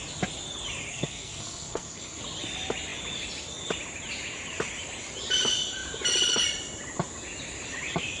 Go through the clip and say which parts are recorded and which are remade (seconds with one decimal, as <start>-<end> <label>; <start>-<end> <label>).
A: 0.0-0.9 recorded; 0.9-2.2 remade; 2.2-8.2 recorded